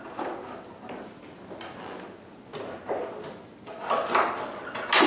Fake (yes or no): no